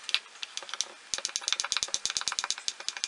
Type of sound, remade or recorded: recorded